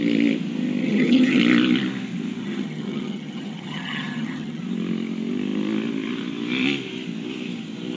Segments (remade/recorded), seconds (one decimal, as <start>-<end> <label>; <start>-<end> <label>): 0.0-0.8 recorded; 0.8-1.4 remade; 1.4-2.4 recorded; 2.4-4.6 remade; 4.6-8.0 recorded

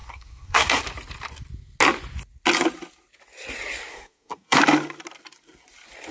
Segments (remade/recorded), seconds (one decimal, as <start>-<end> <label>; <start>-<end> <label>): 0.0-0.8 remade; 0.8-3.9 recorded; 3.9-4.6 remade; 4.6-6.1 recorded

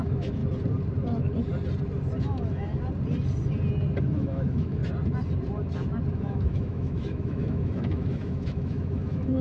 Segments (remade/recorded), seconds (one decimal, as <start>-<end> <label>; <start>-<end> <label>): 0.0-0.4 remade; 0.4-2.2 recorded; 2.2-2.7 remade; 2.7-4.0 recorded; 4.0-4.8 remade; 4.8-6.1 recorded; 6.1-9.4 remade

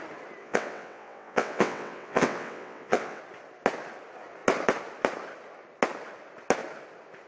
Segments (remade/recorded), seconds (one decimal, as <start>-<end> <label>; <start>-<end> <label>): 0.0-0.4 recorded; 0.4-3.2 remade; 3.2-7.3 recorded

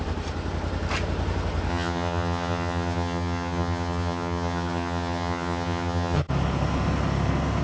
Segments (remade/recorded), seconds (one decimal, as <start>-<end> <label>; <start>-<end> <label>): 0.0-1.7 recorded; 1.7-6.3 remade; 6.3-7.6 recorded

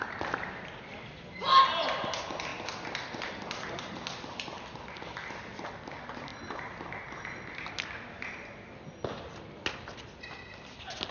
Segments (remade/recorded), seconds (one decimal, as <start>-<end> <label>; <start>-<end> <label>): 0.0-11.1 recorded